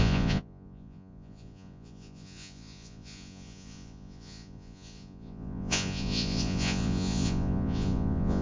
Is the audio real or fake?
fake